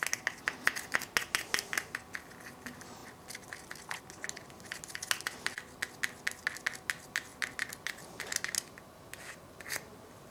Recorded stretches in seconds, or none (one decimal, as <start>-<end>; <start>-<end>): 0.0-10.3